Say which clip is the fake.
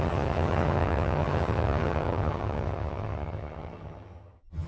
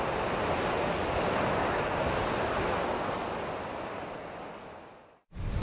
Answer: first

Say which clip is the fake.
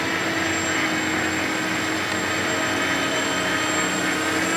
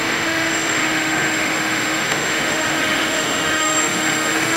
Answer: second